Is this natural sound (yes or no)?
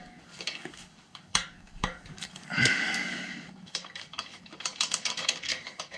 no